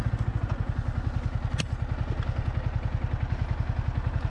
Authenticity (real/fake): real